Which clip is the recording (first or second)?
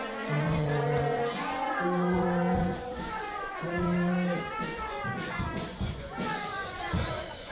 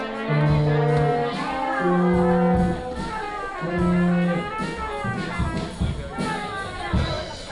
second